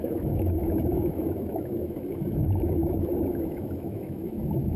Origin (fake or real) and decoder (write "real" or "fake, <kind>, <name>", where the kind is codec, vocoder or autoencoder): fake, autoencoder, DAC-VAE